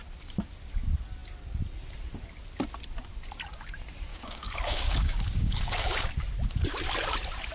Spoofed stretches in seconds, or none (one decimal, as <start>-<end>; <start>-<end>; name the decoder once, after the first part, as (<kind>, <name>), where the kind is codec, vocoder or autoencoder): 4.1-6.1 (codec, DAC)